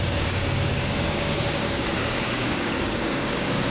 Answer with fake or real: fake